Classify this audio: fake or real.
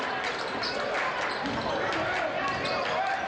real